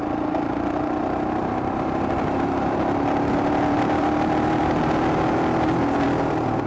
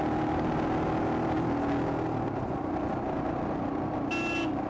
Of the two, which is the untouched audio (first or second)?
second